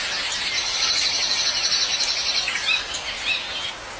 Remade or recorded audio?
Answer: recorded